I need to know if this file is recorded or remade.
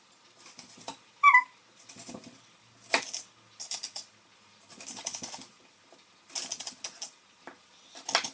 recorded